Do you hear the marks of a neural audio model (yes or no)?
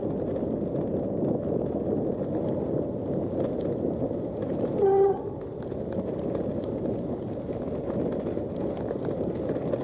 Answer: no